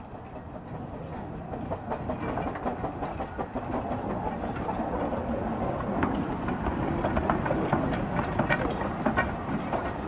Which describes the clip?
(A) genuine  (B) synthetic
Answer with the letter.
A